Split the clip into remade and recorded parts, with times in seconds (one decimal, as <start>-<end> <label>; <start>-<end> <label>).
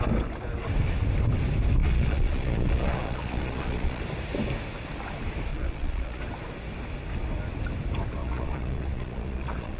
0.0-1.8 recorded; 1.8-4.0 remade; 4.0-5.5 recorded; 5.5-6.2 remade; 6.2-8.2 recorded; 8.2-9.8 remade